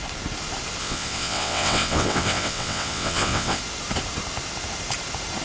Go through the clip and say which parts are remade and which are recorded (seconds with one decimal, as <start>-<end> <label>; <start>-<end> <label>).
0.0-0.8 recorded; 0.8-3.6 remade; 3.6-5.4 recorded